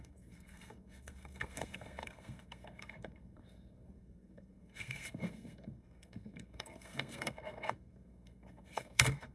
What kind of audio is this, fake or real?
fake